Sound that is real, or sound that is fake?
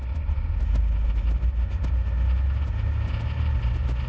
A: real